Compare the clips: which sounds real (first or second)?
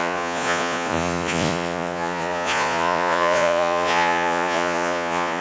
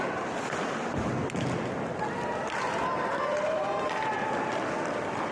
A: second